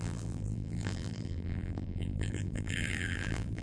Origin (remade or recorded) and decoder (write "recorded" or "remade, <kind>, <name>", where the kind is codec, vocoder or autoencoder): remade, vocoder, BigVGAN v2